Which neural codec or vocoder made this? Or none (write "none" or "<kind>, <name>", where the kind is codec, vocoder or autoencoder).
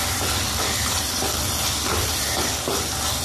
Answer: none